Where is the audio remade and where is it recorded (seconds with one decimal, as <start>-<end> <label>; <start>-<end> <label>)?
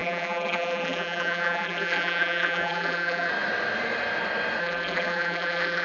0.0-3.3 remade; 3.3-4.6 recorded; 4.6-5.8 remade